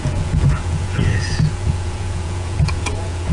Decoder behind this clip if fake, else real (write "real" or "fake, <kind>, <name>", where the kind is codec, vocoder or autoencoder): fake, vocoder, Vocos